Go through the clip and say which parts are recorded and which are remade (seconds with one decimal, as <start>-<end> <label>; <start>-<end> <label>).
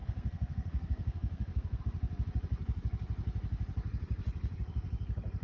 0.0-1.8 remade; 1.8-5.4 recorded